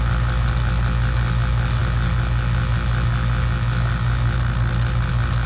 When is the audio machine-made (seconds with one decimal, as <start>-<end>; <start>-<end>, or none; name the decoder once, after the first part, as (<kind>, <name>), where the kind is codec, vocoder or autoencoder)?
none